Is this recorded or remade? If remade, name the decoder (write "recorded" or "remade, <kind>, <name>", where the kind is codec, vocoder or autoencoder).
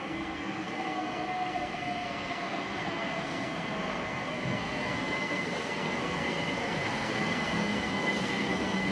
remade, codec, SNAC